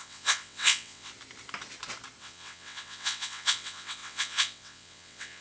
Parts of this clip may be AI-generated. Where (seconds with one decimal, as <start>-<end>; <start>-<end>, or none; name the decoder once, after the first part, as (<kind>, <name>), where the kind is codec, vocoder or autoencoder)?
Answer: 0.0-1.1 (vocoder, WaveNeXt); 2.2-5.4